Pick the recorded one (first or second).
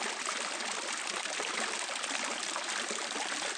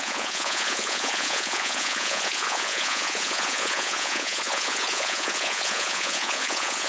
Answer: first